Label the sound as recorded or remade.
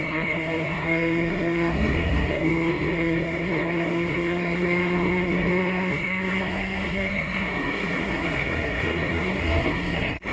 remade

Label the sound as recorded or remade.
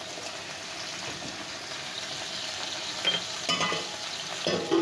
recorded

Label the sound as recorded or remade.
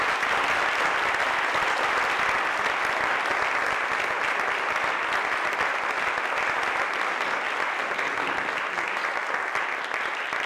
recorded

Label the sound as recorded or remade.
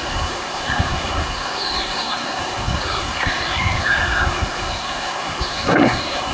remade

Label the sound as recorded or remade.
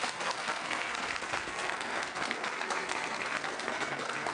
remade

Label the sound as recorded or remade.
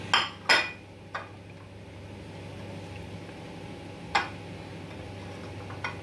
recorded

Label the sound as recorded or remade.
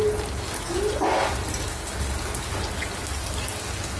recorded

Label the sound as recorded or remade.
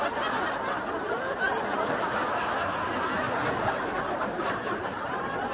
recorded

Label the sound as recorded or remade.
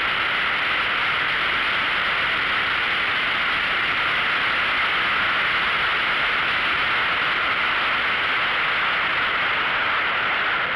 recorded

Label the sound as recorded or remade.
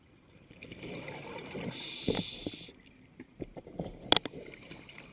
recorded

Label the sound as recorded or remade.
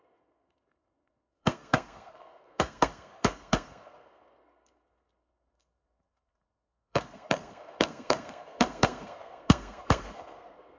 remade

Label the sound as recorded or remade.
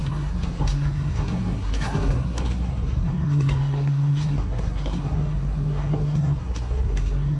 remade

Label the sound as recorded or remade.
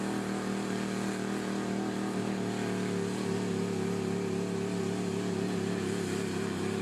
recorded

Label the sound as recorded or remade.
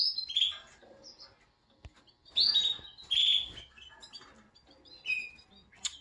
recorded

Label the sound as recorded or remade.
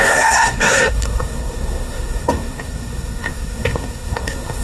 remade